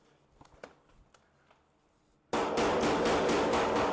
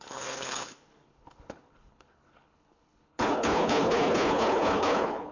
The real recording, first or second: first